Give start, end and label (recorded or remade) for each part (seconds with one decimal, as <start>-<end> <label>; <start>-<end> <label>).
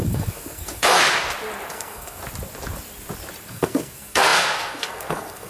0.0-1.0 remade; 1.0-1.7 recorded; 1.7-2.2 remade; 2.2-3.5 recorded; 3.5-5.5 remade